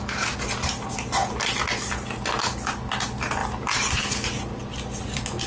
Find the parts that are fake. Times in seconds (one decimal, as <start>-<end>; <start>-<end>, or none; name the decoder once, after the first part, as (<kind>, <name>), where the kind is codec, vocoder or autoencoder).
none